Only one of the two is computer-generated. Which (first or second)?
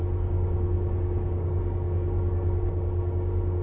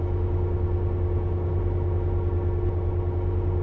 first